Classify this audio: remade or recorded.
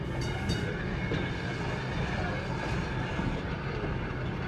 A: recorded